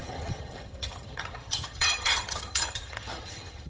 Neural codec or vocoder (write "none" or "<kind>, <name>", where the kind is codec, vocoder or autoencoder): vocoder, HiFi-GAN